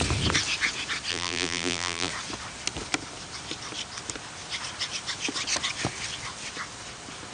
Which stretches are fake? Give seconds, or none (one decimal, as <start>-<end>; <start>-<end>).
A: 1.1-2.1